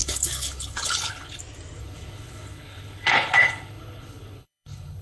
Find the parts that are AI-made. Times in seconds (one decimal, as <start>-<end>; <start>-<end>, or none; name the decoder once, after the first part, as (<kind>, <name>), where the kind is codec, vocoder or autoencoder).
0.0-1.4 (codec, HILCodec); 1.8-5.0